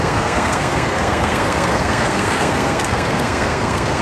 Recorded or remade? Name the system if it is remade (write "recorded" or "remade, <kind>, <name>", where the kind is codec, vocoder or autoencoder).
remade, codec, SNAC